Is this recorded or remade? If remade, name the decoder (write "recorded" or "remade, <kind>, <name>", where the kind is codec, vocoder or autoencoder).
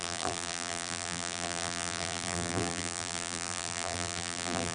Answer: remade, vocoder, BigVGAN v2